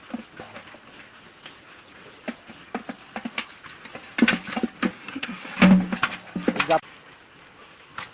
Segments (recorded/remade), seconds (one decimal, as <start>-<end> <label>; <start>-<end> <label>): 0.0-4.9 recorded; 4.9-5.5 remade; 5.5-8.1 recorded